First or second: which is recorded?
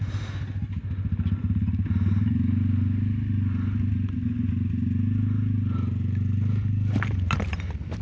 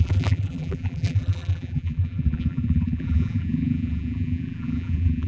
first